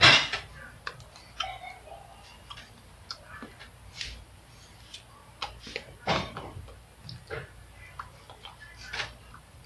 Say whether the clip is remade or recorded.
recorded